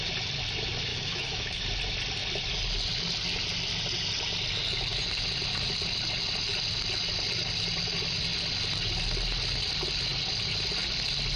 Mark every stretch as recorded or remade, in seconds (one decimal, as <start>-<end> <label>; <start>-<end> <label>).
0.0-0.9 recorded; 0.9-1.6 remade; 1.6-11.4 recorded